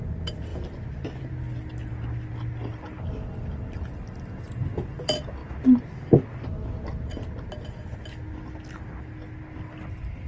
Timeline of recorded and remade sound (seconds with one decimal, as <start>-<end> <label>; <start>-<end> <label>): 0.0-0.5 remade; 0.5-1.4 recorded; 1.4-5.4 remade; 5.4-9.6 recorded; 9.6-10.3 remade